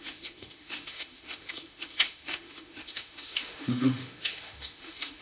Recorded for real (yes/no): no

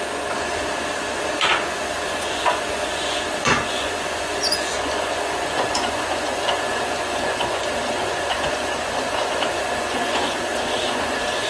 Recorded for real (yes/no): no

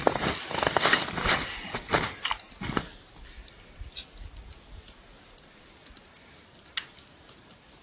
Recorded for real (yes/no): yes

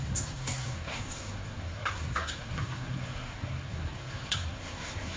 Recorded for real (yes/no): no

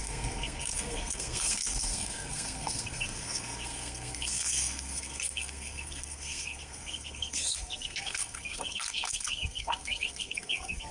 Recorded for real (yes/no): no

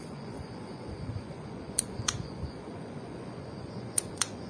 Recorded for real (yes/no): no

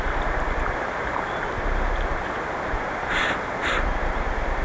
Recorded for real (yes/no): yes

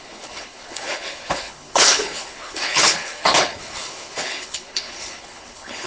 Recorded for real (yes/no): no